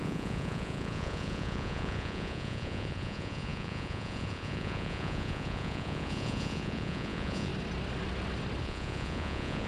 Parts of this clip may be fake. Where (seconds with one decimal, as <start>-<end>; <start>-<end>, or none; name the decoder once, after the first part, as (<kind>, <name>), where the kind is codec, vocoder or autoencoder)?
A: 0.0-7.5 (vocoder, Vocos); 8.6-9.7